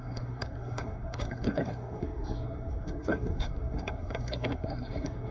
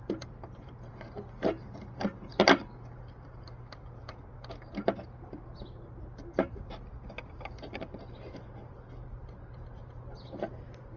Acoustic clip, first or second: second